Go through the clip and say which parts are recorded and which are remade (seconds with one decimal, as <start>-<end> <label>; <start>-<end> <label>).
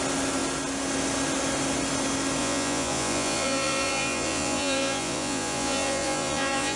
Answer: 0.0-2.4 recorded; 2.4-6.8 remade